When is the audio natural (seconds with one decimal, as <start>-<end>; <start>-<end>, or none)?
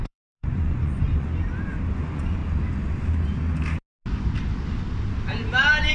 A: 1.3-1.9; 2.4-5.9